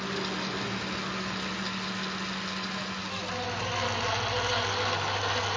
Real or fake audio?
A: real